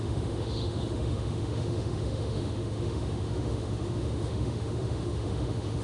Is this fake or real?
fake